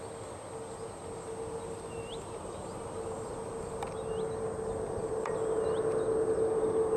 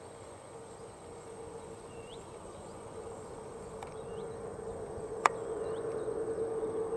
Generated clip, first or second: second